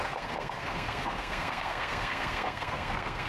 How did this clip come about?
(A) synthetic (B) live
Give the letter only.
A